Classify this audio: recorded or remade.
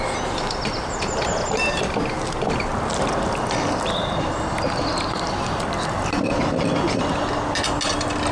recorded